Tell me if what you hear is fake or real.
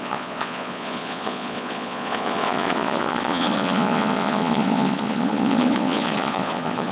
fake